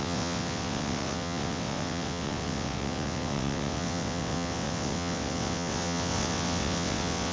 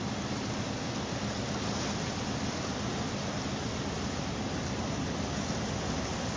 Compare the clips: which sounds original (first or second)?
second